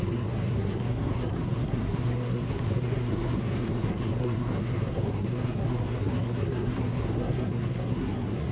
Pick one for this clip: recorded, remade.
remade